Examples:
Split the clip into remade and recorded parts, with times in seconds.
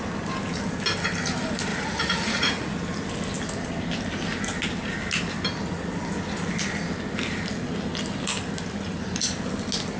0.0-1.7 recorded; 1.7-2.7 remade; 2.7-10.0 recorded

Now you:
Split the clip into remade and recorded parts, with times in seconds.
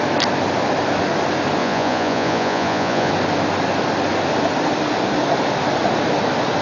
0.0-1.6 recorded; 1.6-3.1 remade; 3.1-6.6 recorded